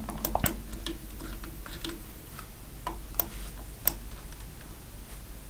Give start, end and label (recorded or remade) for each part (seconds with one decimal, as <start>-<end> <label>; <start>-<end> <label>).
0.0-1.0 recorded; 1.0-2.4 remade; 2.4-5.5 recorded